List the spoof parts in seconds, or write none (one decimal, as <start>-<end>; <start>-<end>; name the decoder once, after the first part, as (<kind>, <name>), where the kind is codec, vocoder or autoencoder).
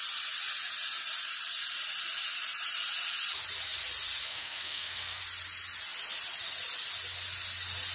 4.3-5.2 (codec, SNAC)